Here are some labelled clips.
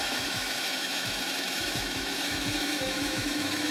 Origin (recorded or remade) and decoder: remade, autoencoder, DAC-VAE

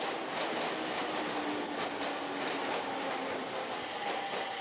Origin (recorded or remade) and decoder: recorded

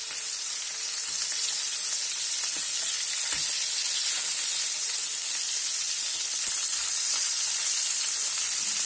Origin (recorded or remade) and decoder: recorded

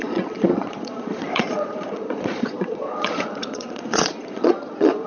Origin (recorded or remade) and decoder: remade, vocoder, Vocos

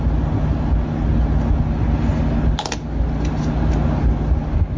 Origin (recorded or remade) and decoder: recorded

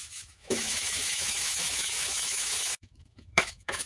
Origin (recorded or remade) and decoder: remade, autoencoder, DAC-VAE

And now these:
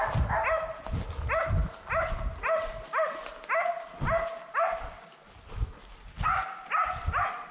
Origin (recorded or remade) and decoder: recorded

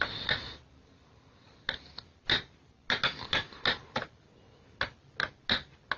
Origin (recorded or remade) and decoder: recorded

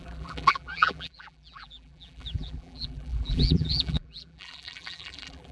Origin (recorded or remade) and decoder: remade, vocoder, BigVGAN v2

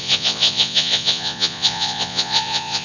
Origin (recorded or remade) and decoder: remade, vocoder, Vocos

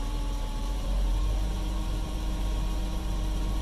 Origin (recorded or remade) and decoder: remade, vocoder, BigVGAN v2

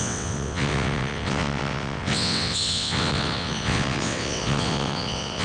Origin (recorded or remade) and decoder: remade, vocoder, WaveNeXt